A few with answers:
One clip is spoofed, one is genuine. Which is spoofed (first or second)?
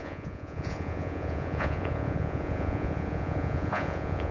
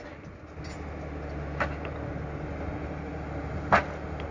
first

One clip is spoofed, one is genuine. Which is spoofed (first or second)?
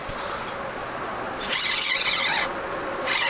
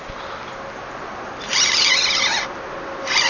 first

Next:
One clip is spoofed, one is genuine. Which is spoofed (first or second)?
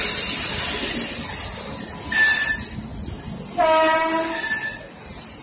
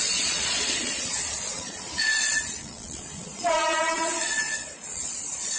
second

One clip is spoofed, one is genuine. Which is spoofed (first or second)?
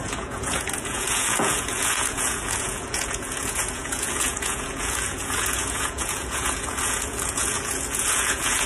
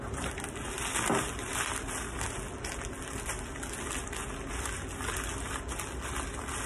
first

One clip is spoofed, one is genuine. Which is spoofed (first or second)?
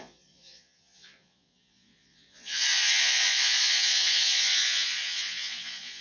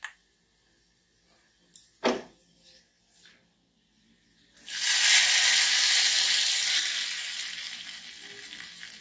first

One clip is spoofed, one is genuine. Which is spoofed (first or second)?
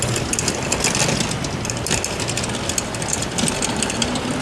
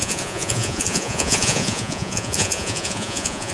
second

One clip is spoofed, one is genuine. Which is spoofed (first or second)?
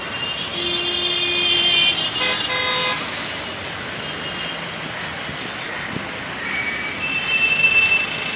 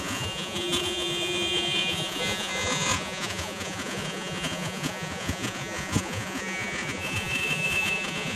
second